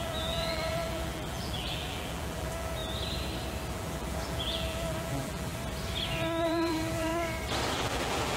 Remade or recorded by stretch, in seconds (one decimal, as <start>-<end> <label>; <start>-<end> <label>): 0.0-2.8 remade; 2.8-3.7 recorded; 3.7-5.5 remade; 5.5-6.4 recorded; 6.4-7.1 remade; 7.1-7.7 recorded; 7.7-8.4 remade